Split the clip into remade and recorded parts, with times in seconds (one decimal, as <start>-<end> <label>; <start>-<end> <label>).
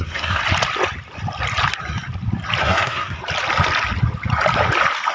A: 0.0-0.4 remade; 0.4-2.6 recorded; 2.6-3.2 remade; 3.2-5.1 recorded